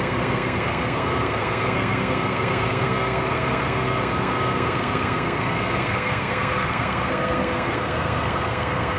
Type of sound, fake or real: fake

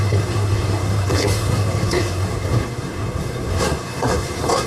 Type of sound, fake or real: fake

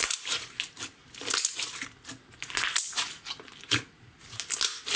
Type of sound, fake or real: real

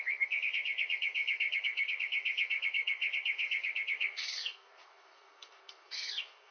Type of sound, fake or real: fake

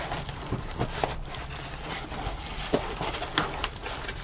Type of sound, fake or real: real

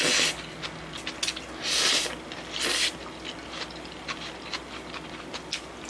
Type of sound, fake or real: real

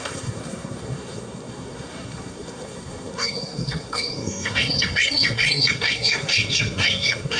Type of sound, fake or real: fake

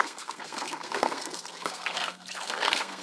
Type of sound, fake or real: fake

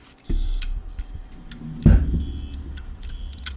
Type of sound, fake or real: real